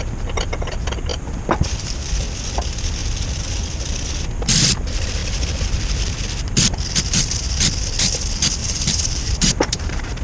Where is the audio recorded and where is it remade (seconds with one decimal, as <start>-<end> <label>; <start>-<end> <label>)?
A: 0.0-1.1 recorded; 1.1-2.1 remade; 2.1-8.6 recorded; 8.6-10.2 remade